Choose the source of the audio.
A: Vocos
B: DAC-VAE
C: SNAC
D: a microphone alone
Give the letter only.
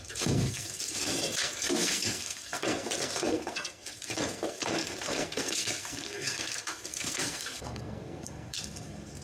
C